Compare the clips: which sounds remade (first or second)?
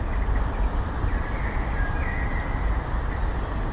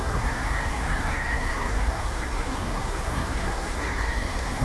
second